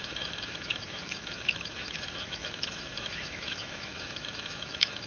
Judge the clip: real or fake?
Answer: fake